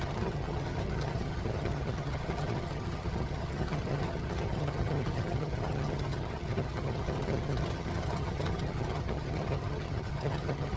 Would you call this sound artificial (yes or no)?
yes